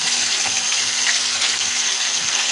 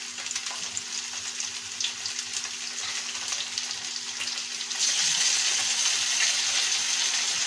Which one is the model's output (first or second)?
first